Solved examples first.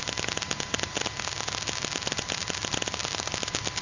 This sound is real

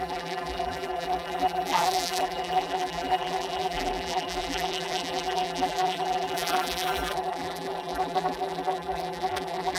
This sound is fake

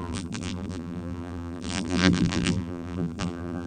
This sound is fake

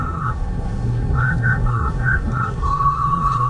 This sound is fake